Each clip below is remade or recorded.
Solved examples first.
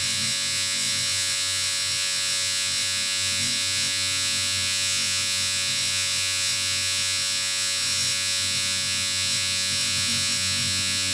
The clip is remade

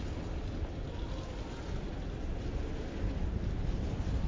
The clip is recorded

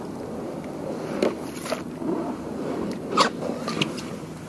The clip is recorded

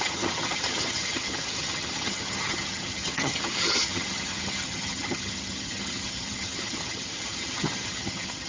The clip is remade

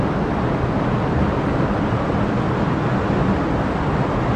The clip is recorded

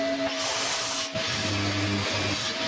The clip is recorded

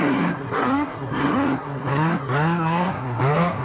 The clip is remade